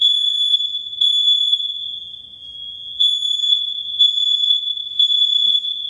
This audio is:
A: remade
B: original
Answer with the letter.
A